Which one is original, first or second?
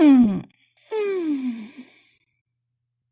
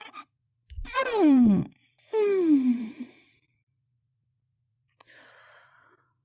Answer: first